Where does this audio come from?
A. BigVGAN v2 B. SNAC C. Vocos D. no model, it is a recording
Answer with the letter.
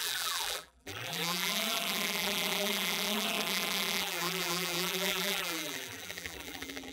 A